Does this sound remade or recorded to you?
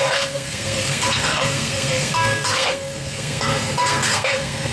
remade